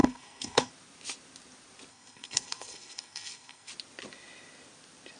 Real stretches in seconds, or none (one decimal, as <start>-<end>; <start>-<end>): 0.7-1.9; 3.7-5.2